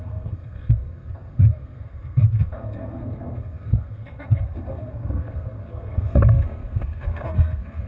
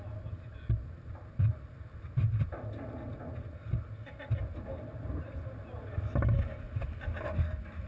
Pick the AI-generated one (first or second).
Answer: first